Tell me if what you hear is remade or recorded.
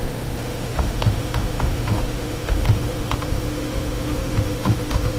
remade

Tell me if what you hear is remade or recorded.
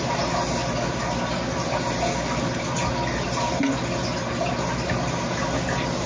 recorded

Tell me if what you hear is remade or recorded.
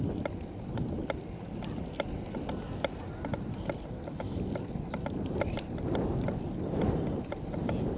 recorded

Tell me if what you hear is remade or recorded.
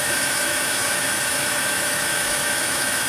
remade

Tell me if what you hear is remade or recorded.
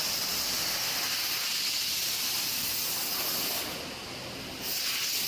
recorded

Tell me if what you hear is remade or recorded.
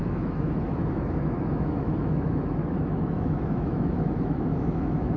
remade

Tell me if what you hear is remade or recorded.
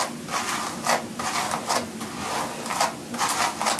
recorded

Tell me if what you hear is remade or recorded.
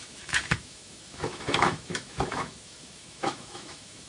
remade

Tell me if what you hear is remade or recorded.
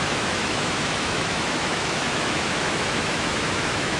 remade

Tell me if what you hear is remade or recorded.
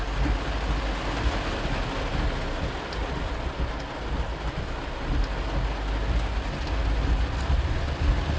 recorded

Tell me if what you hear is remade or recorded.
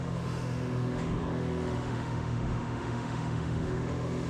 remade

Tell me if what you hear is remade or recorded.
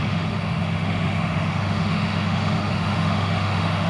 remade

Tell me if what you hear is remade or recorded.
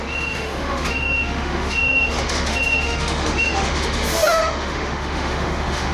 remade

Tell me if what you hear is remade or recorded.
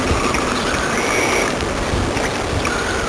recorded